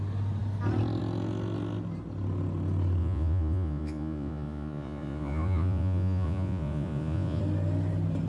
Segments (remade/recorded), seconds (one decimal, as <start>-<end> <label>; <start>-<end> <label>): 0.0-3.0 recorded; 3.0-7.4 remade; 7.4-8.3 recorded